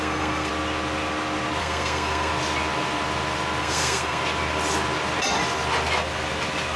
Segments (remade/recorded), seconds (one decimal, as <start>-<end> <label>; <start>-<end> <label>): 0.0-0.5 remade; 0.5-1.6 recorded; 1.6-2.3 remade; 2.3-3.6 recorded; 3.6-4.2 remade; 4.2-6.8 recorded